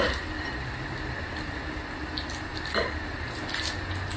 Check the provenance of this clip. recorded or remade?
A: recorded